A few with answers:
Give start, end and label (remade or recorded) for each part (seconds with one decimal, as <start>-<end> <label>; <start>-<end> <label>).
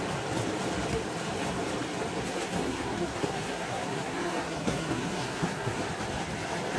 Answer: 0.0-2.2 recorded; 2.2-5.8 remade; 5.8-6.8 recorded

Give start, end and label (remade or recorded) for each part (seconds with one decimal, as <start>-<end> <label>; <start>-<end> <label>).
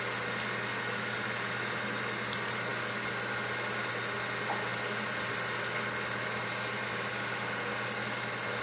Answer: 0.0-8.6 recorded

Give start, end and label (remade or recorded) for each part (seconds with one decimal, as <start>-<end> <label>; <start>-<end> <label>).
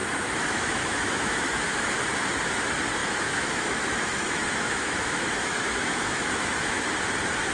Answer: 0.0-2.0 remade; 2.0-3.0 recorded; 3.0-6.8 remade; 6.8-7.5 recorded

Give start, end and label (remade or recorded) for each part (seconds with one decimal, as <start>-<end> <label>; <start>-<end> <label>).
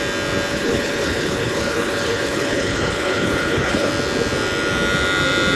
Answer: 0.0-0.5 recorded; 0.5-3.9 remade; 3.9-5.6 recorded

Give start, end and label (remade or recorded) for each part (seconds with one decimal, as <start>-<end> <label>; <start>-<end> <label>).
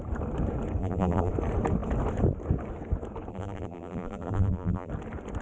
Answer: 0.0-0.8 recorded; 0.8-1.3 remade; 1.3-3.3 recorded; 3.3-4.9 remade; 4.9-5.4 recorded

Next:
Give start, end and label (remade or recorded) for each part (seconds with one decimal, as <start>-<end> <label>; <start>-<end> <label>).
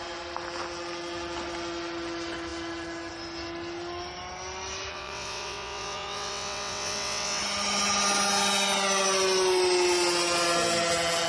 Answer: 0.0-4.9 recorded; 4.9-7.4 remade; 7.4-11.3 recorded